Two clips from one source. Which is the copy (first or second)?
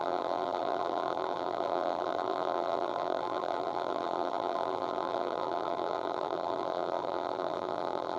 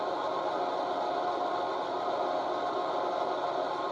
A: first